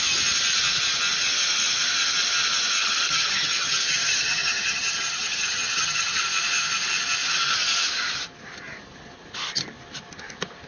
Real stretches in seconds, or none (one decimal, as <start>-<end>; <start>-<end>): 0.0-2.8; 6.2-10.7